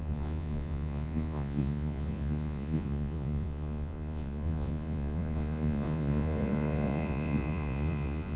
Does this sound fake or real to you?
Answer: fake